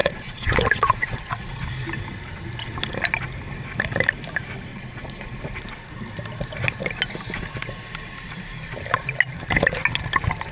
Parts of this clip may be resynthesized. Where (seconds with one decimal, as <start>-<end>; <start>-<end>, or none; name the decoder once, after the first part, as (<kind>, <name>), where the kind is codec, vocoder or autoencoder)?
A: 0.0-1.5 (vocoder, Vocos); 4.7-5.4